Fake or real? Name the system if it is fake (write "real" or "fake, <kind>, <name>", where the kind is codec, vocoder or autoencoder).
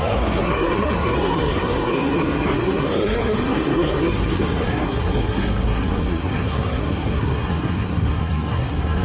fake, codec, SNAC